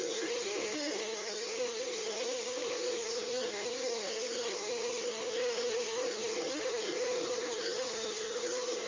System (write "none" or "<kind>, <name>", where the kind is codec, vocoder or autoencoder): codec, SNAC